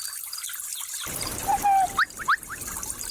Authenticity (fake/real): real